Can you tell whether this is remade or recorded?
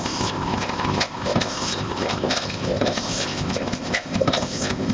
remade